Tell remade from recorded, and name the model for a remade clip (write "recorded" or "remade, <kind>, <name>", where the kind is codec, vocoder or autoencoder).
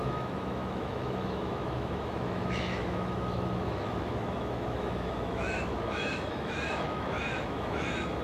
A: remade, autoencoder, DAC-VAE